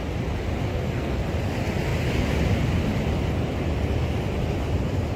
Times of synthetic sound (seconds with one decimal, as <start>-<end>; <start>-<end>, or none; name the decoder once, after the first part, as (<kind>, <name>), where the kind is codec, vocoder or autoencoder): 0.7-1.2 (codec, SNAC)

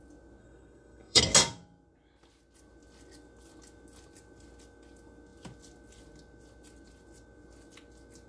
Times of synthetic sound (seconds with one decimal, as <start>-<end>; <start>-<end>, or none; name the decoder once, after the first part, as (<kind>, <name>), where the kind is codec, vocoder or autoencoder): 0.4-1.2 (codec, SNAC)

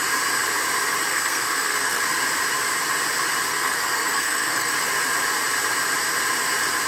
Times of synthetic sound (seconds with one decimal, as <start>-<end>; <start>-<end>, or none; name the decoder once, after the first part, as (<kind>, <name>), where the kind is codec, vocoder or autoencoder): 1.1-2.0 (codec, SNAC); 3.5-4.7

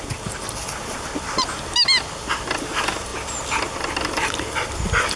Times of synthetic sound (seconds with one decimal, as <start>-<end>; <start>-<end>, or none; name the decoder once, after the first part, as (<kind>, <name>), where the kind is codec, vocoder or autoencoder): none

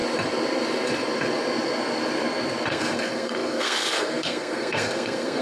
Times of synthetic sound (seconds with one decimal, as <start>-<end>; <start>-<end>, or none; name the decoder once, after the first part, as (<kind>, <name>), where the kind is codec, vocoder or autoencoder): 2.7-5.4 (codec, SNAC)

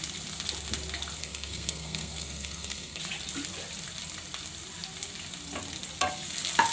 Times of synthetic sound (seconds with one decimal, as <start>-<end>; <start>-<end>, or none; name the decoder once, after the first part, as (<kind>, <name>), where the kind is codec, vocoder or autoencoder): 1.2-3.0 (codec, SNAC)

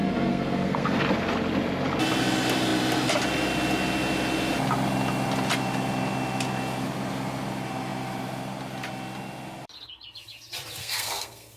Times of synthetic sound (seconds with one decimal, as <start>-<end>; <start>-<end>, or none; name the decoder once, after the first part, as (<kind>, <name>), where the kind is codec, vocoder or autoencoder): 0.0-1.0 (codec, SNAC); 10.8-11.6